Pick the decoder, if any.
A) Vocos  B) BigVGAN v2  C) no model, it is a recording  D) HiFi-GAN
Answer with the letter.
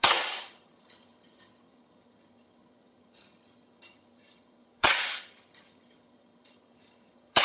D